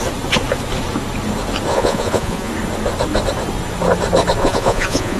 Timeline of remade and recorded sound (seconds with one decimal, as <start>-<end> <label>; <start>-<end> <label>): 0.0-1.7 recorded; 1.7-2.5 remade; 2.5-4.4 recorded; 4.4-5.2 remade